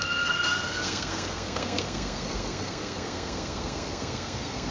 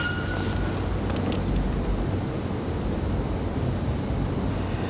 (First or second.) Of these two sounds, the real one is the second